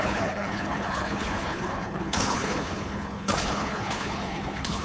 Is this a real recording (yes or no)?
no